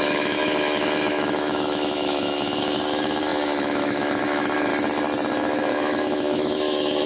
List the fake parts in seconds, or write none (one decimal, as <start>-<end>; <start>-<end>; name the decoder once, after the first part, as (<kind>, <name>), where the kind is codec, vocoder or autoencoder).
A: 0.0-4.7 (autoencoder, DAC-VAE); 5.3-7.1